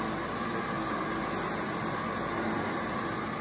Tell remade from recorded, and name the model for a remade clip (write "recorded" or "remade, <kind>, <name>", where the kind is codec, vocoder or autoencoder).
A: recorded